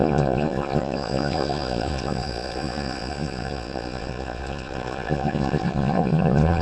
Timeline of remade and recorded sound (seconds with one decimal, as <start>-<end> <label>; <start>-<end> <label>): 0.0-6.6 remade